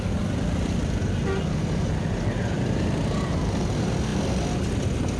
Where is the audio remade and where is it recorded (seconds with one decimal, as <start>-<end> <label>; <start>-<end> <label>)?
0.0-5.2 recorded